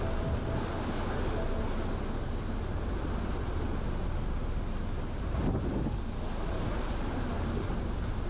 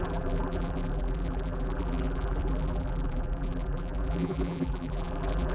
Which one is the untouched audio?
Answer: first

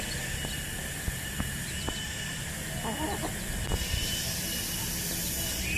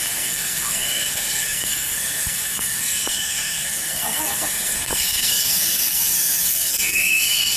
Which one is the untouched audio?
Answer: first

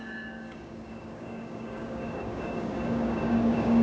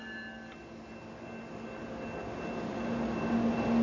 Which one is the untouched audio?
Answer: second